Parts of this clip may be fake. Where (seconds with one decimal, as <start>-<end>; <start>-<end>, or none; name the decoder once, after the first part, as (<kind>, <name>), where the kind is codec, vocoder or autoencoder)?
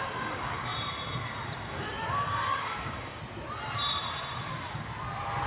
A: 0.0-0.7 (codec, DAC); 1.7-3.2